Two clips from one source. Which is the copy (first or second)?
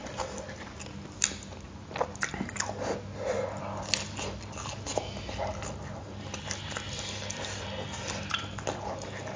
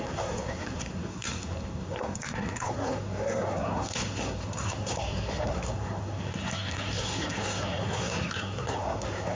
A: second